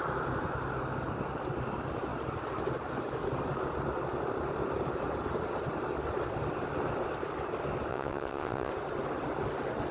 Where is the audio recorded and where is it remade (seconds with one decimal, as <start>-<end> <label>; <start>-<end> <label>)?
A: 0.0-7.9 recorded; 7.9-8.7 remade; 8.7-9.9 recorded